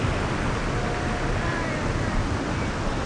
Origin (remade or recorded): recorded